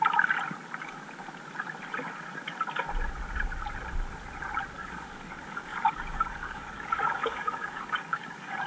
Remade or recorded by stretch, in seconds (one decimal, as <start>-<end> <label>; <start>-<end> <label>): 0.0-4.8 recorded; 4.8-8.7 remade

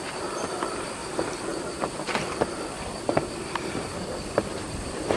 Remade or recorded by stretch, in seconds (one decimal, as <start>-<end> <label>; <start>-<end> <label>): 0.0-5.2 remade

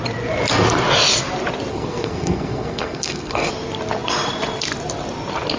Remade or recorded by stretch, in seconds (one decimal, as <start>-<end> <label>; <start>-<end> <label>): 0.0-1.7 recorded; 1.7-3.5 remade; 3.5-5.6 recorded

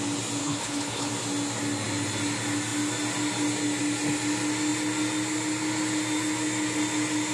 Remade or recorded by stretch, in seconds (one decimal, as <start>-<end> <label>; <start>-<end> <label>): 0.0-0.4 recorded; 0.4-1.1 remade; 1.1-7.3 recorded

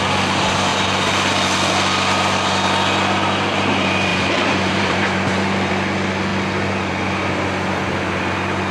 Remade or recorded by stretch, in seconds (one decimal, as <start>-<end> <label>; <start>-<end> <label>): 0.0-4.1 recorded; 4.1-5.7 remade; 5.7-8.7 recorded

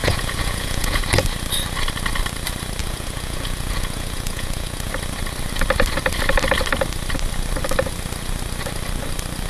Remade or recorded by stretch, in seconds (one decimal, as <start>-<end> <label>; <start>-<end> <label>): 0.0-1.0 remade; 1.0-2.8 recorded; 2.8-4.9 remade; 4.9-9.5 recorded